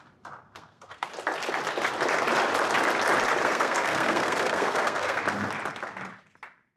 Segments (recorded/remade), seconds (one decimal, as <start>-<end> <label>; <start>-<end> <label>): 0.0-0.4 recorded; 0.4-1.1 remade; 1.1-3.4 recorded; 3.4-5.2 remade; 5.2-6.8 recorded